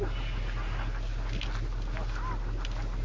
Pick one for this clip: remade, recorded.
recorded